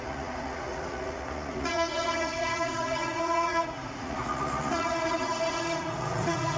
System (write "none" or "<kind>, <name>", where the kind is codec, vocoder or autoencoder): vocoder, Vocos